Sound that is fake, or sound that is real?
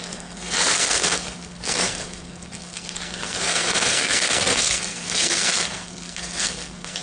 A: fake